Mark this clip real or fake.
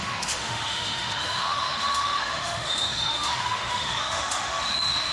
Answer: fake